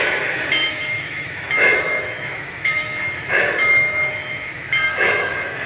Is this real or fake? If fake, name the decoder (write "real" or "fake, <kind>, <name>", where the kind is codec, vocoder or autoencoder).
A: fake, autoencoder, DAC-VAE